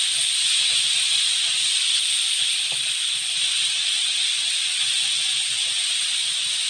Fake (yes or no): no